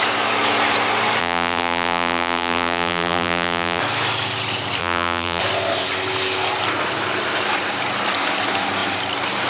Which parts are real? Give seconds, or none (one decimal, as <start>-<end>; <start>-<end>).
0.0-1.2; 3.8-4.8; 5.4-9.5